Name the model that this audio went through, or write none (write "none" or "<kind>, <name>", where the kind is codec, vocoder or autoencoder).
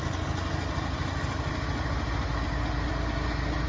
none